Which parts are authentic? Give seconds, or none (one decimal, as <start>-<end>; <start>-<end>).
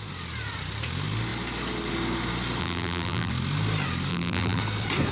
0.0-2.6; 3.3-4.1; 4.6-5.1